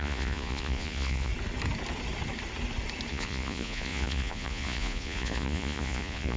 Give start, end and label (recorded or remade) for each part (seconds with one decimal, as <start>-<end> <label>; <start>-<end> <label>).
0.0-1.3 remade; 1.3-3.1 recorded; 3.1-6.4 remade

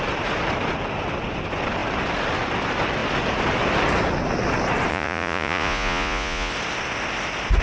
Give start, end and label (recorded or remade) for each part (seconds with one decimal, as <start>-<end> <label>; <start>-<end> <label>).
0.0-4.9 recorded; 4.9-6.5 remade; 6.5-7.6 recorded